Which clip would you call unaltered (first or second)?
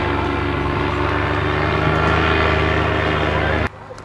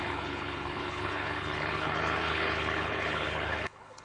first